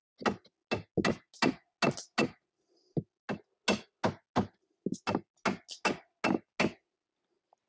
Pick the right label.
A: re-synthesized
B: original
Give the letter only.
B